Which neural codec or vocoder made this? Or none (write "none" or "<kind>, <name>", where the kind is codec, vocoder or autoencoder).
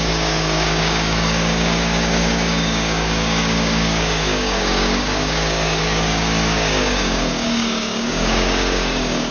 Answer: codec, DAC